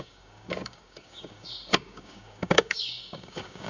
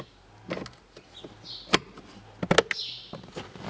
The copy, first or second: first